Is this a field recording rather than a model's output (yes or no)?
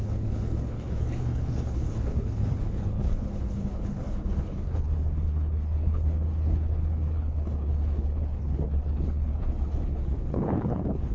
no